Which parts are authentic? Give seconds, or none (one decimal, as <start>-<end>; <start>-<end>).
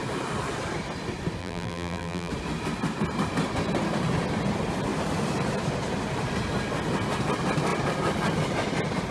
0.0-1.4; 2.3-9.1